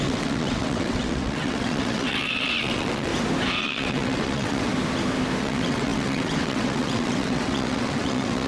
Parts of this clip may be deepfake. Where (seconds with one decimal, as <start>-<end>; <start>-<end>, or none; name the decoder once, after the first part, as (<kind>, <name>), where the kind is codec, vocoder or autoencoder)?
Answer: 0.0-3.1 (vocoder, WaveNeXt); 3.6-4.7; 5.4-8.5